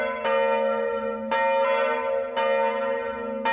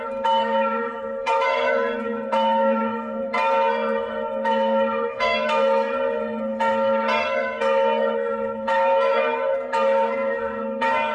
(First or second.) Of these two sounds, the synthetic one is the second